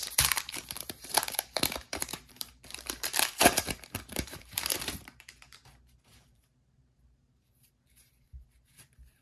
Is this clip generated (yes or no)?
yes